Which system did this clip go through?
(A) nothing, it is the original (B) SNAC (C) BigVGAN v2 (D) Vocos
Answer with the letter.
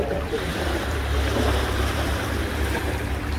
C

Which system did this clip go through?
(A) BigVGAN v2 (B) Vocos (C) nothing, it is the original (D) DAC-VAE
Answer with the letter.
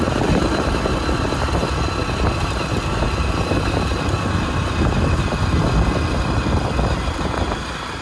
C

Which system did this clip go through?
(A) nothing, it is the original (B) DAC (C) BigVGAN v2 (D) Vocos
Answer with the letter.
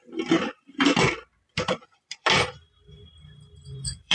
C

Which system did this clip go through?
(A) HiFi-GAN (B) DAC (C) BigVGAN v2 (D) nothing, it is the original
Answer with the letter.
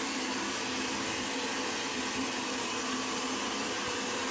D